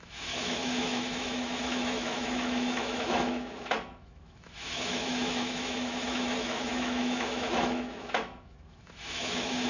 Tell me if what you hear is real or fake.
fake